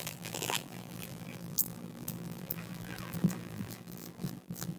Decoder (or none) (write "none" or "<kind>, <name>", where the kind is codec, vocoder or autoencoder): vocoder, BigVGAN v2